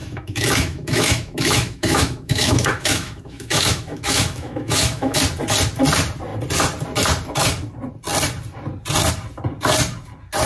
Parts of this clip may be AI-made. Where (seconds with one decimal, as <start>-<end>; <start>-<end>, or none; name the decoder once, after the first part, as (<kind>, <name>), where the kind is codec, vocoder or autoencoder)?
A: 0.0-5.2 (autoencoder, DAC-VAE)